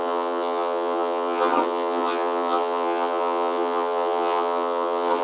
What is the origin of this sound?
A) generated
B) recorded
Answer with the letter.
A